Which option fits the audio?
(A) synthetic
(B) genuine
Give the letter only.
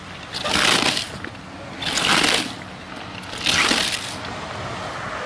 B